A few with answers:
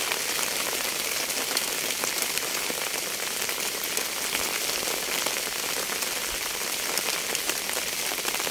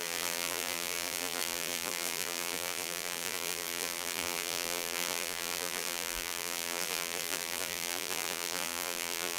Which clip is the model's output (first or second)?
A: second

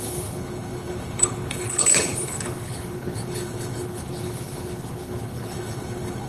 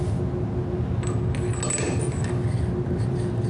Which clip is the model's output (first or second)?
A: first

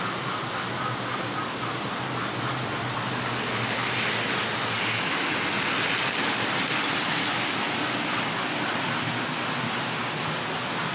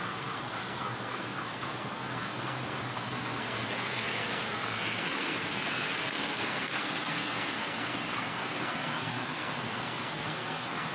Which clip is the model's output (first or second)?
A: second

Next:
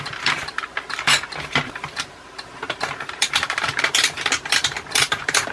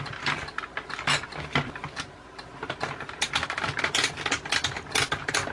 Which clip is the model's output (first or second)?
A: first